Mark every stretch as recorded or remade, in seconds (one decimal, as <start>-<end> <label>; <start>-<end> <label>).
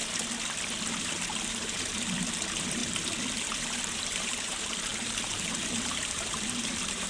0.0-1.0 recorded; 1.0-2.8 remade; 2.8-3.4 recorded; 3.4-7.1 remade